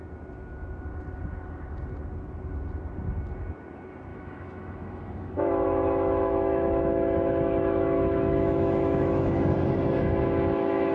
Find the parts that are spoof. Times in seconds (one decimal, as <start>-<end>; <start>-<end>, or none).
4.1-9.3